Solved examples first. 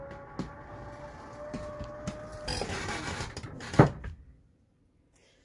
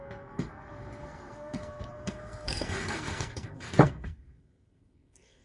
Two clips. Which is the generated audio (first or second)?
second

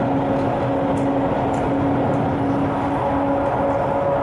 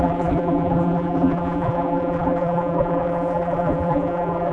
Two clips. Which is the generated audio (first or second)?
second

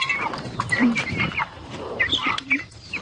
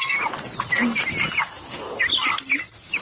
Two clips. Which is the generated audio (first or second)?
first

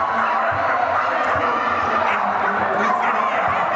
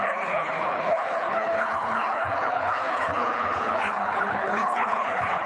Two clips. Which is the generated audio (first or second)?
second